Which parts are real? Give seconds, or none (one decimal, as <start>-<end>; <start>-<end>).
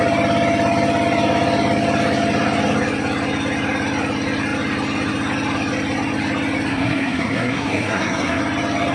0.0-6.7; 8.4-8.9